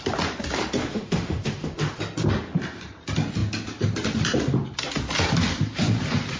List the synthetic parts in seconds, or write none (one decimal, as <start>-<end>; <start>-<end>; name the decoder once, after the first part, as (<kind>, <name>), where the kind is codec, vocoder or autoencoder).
0.8-2.0 (autoencoder, DAC-VAE)